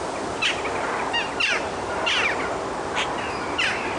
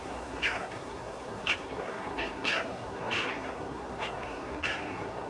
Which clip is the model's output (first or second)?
second